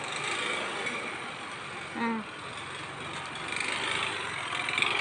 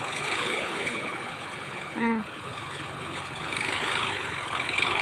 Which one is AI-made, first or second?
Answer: second